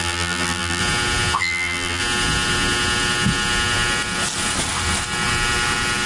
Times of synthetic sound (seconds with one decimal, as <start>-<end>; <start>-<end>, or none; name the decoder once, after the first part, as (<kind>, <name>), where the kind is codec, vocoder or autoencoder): 0.0-0.8 (vocoder, BigVGAN v2); 1.4-2.0